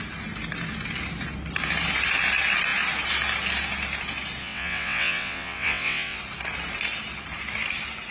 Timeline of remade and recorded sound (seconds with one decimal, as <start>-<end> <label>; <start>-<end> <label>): 0.0-4.4 recorded; 4.4-6.2 remade; 6.2-8.1 recorded